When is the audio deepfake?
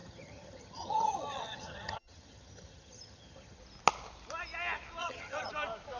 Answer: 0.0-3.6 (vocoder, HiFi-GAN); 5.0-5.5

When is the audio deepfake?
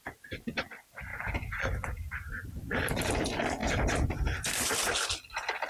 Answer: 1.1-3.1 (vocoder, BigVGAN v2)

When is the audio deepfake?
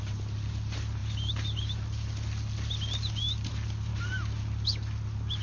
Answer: none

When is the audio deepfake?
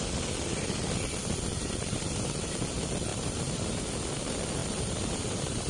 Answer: 1.5-2.6 (vocoder, BigVGAN v2); 3.1-3.8; 4.6-5.7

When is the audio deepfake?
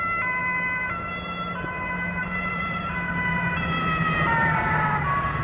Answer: 2.2-2.9 (vocoder, BigVGAN v2); 4.4-5.0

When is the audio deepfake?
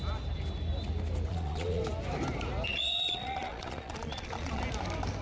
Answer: 1.3-1.8 (vocoder, Vocos); 2.7-4.6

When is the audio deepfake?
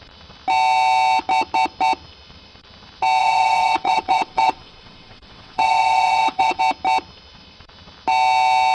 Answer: 3.2-6.6 (vocoder, WaveNeXt)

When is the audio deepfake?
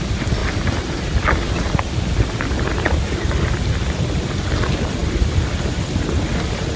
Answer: none